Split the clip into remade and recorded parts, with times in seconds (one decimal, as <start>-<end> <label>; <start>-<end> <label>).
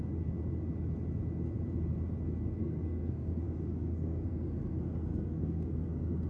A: 0.0-2.6 recorded; 2.6-6.3 remade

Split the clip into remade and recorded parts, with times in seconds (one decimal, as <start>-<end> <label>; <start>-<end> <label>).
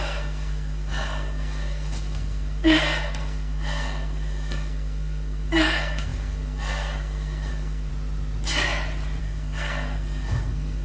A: 0.0-7.9 remade; 7.9-9.2 recorded; 9.2-10.8 remade